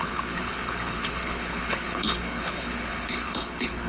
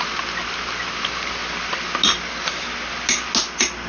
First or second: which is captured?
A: second